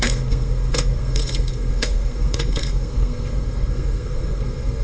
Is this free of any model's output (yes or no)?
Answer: no